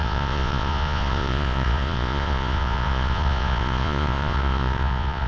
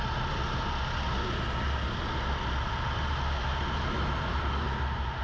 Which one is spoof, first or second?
first